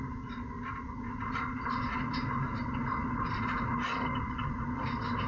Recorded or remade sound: recorded